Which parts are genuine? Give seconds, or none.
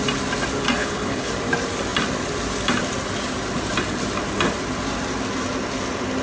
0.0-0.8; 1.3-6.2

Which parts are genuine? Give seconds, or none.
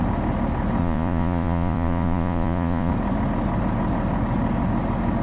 0.0-0.8; 2.9-5.2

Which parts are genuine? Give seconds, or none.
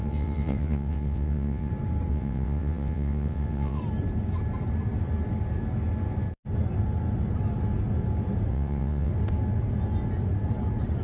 1.7-2.1; 3.8-8.5; 9.1-11.0